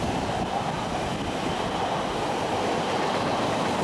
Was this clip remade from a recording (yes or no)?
no